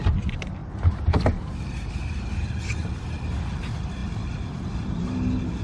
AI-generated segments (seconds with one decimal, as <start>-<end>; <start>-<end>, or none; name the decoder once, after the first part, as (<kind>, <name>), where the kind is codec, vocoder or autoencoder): none